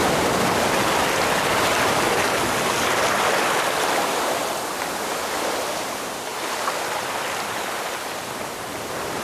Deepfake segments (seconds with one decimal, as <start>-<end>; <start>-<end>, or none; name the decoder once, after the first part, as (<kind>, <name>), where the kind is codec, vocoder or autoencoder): none